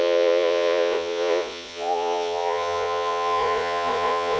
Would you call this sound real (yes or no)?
no